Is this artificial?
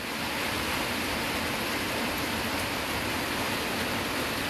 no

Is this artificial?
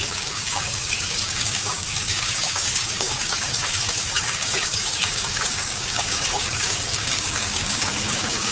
yes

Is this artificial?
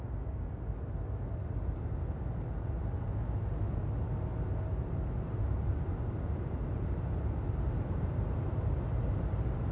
no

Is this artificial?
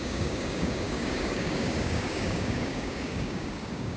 yes